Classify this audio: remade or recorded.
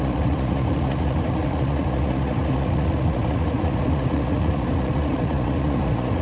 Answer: remade